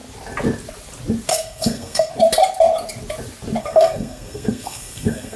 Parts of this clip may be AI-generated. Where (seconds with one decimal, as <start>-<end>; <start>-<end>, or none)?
1.3-2.1; 3.6-5.4